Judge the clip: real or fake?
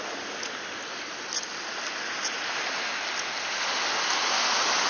real